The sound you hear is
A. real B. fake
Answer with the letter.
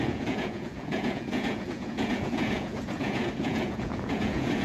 B